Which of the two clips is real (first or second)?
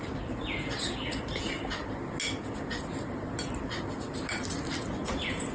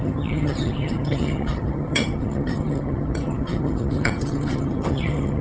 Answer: first